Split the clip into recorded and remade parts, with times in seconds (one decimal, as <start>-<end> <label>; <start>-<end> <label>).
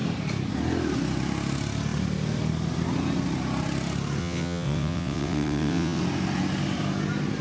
0.0-4.2 recorded; 4.2-6.0 remade; 6.0-7.4 recorded